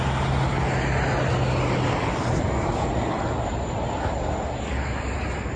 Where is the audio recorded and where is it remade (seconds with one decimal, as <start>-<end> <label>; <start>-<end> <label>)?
0.0-5.6 recorded